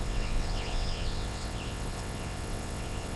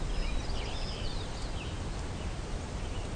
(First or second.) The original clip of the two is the second